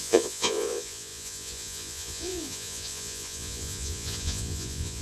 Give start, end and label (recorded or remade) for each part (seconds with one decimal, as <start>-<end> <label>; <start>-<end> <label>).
0.0-5.0 remade